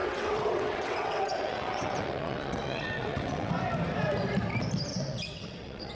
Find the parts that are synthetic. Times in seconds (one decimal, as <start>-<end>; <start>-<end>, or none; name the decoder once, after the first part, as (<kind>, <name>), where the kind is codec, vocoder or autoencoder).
0.0-3.5 (vocoder, WaveNeXt); 4.9-5.9